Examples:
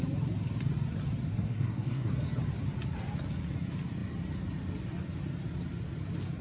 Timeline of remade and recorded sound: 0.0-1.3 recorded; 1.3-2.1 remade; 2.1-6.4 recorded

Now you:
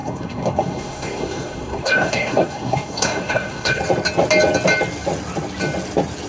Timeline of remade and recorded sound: 0.0-3.8 remade; 3.8-6.3 recorded

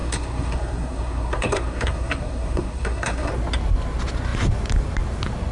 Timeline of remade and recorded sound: 0.0-3.3 remade; 3.3-5.5 recorded